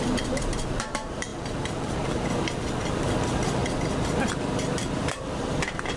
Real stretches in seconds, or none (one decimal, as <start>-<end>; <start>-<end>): 3.6-4.8

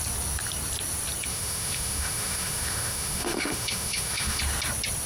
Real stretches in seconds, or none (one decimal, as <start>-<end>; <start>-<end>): 0.0-1.3; 4.4-5.1

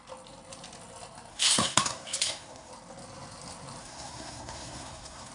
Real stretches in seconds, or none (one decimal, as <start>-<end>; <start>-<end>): 0.0-1.3; 2.7-3.8

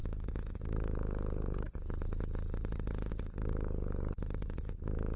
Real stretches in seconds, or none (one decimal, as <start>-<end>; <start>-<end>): 0.0-5.2